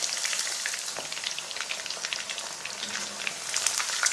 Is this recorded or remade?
recorded